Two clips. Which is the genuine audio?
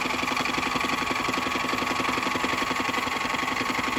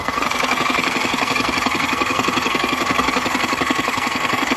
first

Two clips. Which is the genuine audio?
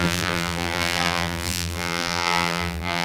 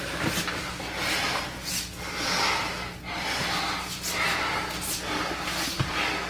second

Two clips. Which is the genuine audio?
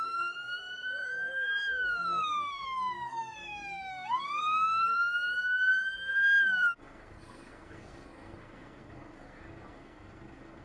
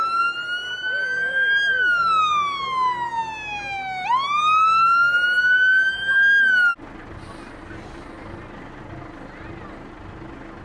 second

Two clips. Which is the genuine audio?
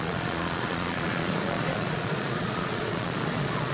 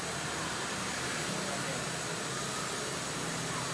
second